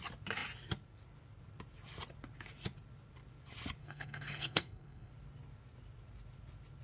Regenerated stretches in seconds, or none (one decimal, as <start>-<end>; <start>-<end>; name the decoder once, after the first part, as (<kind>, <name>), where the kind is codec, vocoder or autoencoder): 3.8-5.1 (codec, SNAC)